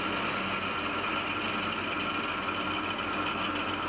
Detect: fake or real real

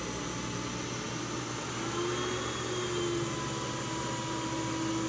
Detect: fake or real real